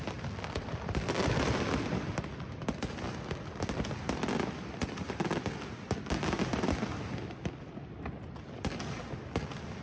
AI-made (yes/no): no